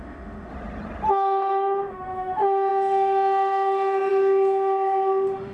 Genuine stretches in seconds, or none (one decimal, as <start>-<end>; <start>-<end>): 0.5-1.1